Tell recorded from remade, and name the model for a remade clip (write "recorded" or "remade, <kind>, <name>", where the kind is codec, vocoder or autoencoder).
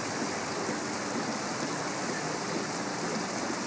recorded